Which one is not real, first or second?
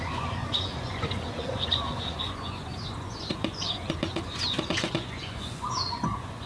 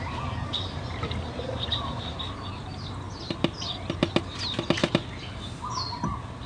first